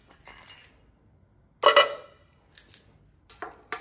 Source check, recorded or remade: recorded